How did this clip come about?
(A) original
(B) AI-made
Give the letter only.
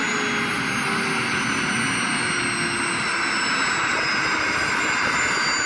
A